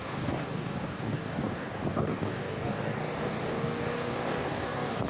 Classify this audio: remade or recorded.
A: remade